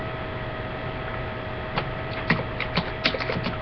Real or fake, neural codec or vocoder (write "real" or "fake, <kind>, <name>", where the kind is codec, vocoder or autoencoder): real